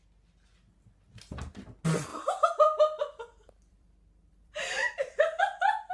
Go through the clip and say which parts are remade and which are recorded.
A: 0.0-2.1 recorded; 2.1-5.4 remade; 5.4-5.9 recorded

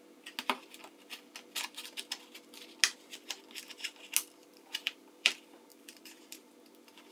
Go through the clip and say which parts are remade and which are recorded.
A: 0.0-4.4 recorded; 4.4-5.3 remade; 5.3-5.7 recorded; 5.7-6.5 remade; 6.5-7.1 recorded

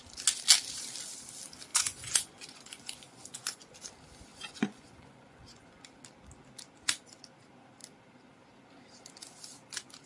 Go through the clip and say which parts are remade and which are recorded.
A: 0.0-1.7 recorded; 1.7-3.7 remade; 3.7-4.3 recorded; 4.3-5.8 remade; 5.8-10.1 recorded

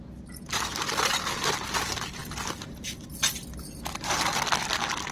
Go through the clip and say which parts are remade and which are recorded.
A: 0.0-5.1 recorded

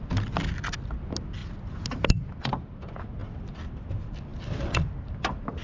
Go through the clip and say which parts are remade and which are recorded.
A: 0.0-1.4 recorded; 1.4-1.9 remade; 1.9-3.2 recorded; 3.2-3.9 remade; 3.9-5.6 recorded

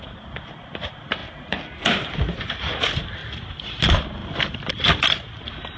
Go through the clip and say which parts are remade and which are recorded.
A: 0.0-3.2 remade; 3.2-3.8 recorded; 3.8-5.8 remade

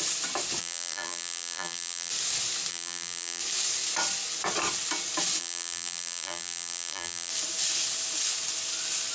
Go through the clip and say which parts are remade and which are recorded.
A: 0.0-0.6 recorded; 0.6-2.1 remade; 2.1-2.7 recorded; 2.7-3.4 remade; 3.4-5.4 recorded; 5.4-7.3 remade; 7.3-9.1 recorded

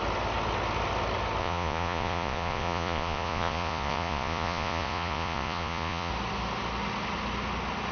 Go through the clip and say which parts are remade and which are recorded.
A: 0.0-1.4 recorded; 1.4-6.1 remade; 6.1-7.9 recorded